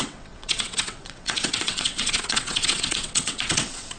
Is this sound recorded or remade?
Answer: remade